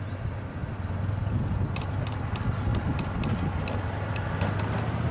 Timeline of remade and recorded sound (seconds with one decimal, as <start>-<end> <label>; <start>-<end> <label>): 0.0-5.1 recorded